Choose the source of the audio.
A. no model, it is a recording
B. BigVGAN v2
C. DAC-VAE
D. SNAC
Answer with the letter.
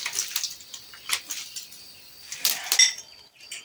A